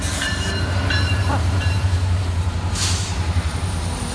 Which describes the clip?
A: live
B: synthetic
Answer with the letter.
B